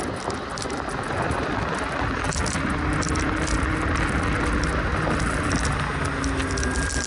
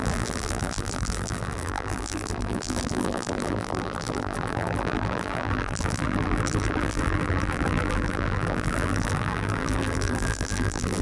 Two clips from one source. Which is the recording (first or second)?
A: first